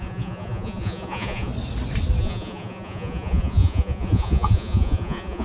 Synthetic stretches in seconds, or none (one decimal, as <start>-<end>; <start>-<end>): 0.0-1.5; 2.2-5.4